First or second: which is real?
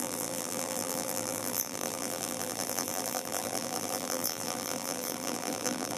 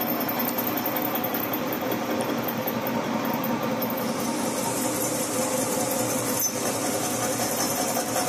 second